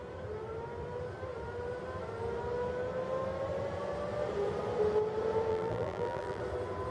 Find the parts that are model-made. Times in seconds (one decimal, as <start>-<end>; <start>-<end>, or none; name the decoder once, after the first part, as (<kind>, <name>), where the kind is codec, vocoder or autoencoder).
5.5-6.4 (vocoder, BigVGAN v2)